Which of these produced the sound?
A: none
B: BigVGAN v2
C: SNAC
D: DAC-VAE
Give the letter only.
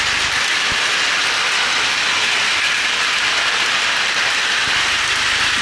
B